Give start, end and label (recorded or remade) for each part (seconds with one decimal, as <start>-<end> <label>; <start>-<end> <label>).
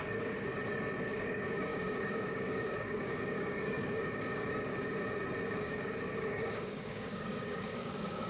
0.0-0.5 remade; 0.5-1.0 recorded; 1.0-4.7 remade; 4.7-5.6 recorded; 5.6-8.3 remade